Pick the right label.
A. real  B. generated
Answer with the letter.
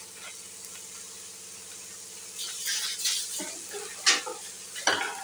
A